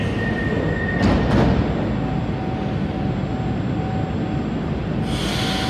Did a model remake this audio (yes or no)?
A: no